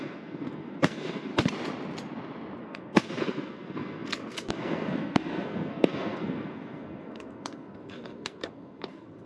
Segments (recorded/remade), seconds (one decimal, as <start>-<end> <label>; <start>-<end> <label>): 0.0-1.3 remade; 1.3-2.6 recorded; 2.6-9.3 remade